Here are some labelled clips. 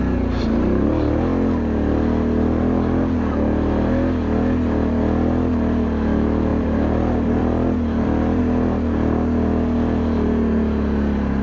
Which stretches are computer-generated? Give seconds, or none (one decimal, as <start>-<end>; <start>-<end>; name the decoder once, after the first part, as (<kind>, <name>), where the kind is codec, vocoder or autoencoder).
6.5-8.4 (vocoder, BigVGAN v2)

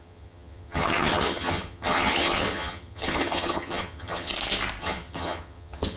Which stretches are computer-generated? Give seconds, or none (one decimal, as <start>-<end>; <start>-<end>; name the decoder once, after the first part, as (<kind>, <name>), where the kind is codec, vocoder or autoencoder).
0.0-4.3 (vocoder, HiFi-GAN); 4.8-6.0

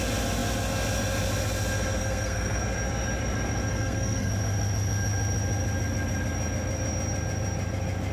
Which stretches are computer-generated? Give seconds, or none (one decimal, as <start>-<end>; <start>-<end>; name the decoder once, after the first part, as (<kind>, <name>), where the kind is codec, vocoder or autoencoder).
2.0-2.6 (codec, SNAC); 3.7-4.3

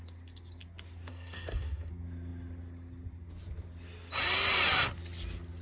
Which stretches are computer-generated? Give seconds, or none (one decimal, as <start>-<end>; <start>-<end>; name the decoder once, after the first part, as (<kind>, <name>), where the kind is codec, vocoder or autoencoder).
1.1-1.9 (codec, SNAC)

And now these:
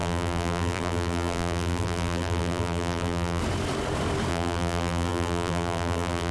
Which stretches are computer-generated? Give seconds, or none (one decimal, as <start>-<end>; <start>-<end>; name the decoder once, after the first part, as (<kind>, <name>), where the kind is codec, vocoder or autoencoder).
0.0-3.4 (vocoder, BigVGAN v2); 4.3-6.3

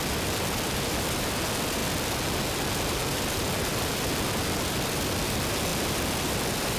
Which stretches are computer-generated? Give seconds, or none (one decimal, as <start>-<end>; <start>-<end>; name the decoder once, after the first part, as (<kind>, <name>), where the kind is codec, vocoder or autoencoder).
none

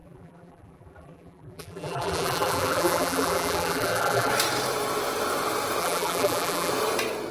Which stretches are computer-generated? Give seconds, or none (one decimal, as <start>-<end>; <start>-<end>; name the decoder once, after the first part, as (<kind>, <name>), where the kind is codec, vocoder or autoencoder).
0.0-4.3 (vocoder, BigVGAN v2); 5.8-6.7

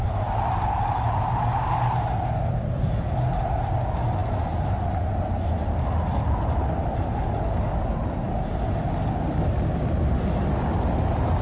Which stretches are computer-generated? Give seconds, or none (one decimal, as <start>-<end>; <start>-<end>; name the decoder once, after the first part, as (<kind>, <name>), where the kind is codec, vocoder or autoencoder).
none